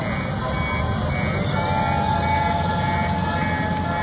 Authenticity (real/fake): real